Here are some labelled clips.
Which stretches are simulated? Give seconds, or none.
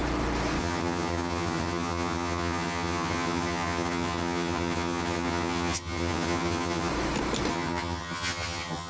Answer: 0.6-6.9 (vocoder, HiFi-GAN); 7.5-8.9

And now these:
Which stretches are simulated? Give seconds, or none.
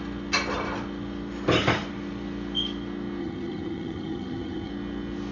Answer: 3.2-4.7 (vocoder, HiFi-GAN)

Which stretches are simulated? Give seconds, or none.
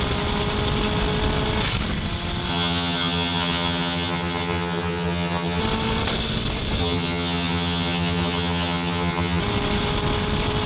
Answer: 2.5-5.6 (vocoder, HiFi-GAN); 6.8-9.4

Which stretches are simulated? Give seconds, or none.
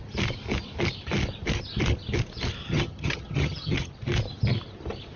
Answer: 2.6-3.9 (vocoder, HiFi-GAN)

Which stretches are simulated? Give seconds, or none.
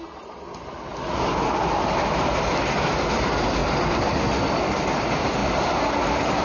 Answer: none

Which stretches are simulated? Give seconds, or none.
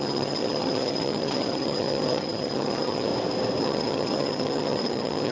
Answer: 0.0-3.1 (vocoder, HiFi-GAN); 3.6-5.3